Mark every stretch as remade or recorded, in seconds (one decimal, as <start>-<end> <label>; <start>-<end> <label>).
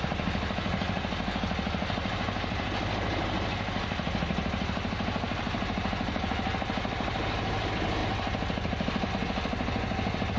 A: 0.0-10.4 recorded